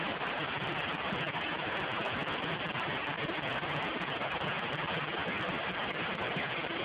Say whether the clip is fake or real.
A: real